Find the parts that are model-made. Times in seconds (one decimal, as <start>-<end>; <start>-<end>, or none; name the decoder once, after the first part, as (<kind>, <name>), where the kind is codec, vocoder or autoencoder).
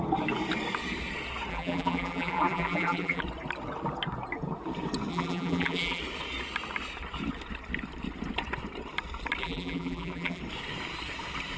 1.5-3.2 (vocoder, BigVGAN v2); 5.1-6.0; 9.4-10.4